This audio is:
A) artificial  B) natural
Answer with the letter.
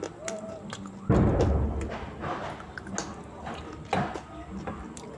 B